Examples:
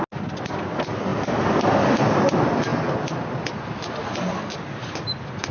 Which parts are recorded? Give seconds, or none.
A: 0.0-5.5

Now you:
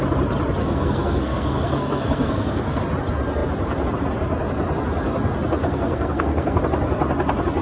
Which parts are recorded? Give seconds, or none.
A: 0.0-0.6; 2.8-5.6; 6.6-7.6

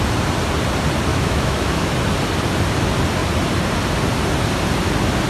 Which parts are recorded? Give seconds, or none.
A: 0.0-1.1; 1.9-5.3

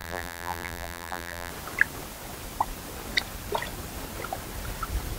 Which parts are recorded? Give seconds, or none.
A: 1.5-5.2

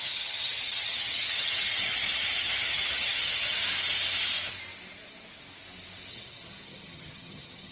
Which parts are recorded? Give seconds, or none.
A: 3.6-6.1

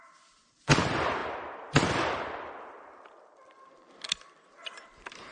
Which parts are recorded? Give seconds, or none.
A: 0.0-5.3